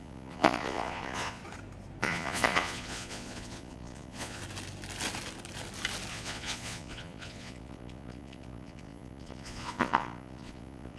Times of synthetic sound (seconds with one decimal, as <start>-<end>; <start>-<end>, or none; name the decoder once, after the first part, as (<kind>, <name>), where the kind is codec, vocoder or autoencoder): 0.0-1.4 (vocoder, Vocos); 2.0-4.4; 6.1-11.0